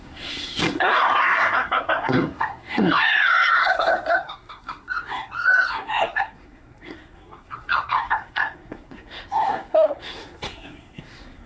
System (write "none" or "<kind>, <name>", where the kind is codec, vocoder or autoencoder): codec, SNAC